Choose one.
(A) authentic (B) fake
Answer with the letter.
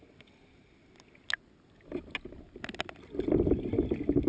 A